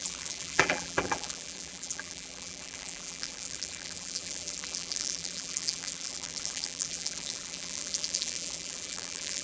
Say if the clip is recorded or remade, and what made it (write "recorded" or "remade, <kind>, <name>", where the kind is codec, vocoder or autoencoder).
remade, vocoder, BigVGAN v2